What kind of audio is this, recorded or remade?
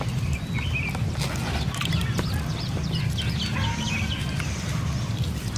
recorded